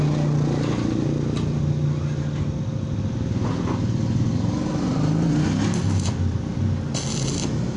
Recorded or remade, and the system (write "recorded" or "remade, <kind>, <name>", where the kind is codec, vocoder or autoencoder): recorded